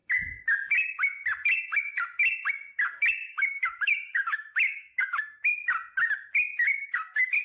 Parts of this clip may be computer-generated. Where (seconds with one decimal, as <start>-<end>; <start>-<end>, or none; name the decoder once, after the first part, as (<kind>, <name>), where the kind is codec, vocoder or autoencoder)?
3.2-5.2 (autoencoder, DAC-VAE); 6.7-7.4